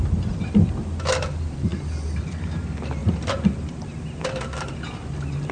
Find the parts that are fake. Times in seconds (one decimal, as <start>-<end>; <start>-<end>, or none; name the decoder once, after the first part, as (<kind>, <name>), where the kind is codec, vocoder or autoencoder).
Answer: none